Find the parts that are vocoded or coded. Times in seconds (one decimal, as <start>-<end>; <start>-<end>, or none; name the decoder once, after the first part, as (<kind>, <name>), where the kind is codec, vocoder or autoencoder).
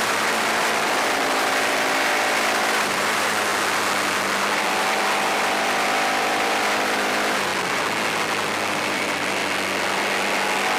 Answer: 0.0-3.5 (vocoder, BigVGAN v2); 4.6-7.5; 8.8-9.4